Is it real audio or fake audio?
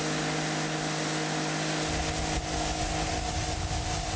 real